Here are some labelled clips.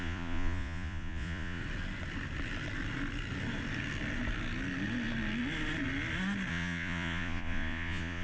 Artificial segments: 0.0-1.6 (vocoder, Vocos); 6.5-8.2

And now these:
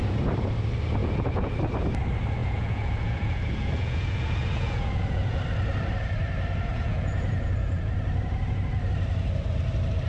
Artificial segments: 1.0-1.5 (vocoder, Vocos); 2.4-5.4; 6.7-7.9

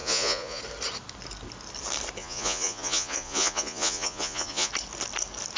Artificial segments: 0.0-0.6 (vocoder, Vocos); 2.2-4.7

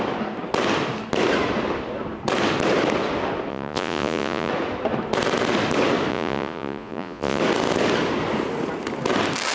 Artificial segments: 3.5-4.5 (vocoder, Vocos); 6.1-7.4

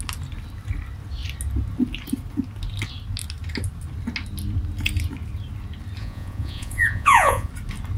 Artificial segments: 6.0-7.5 (vocoder, Vocos)

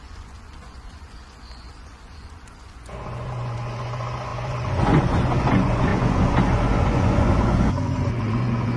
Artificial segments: 0.0-8.8 (vocoder, Vocos)

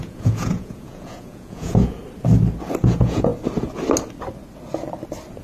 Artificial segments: 0.0-2.0 (vocoder, Vocos); 2.8-3.3

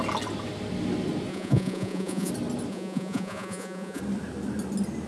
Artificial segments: 1.3-2.3 (vocoder, Vocos); 2.7-4.0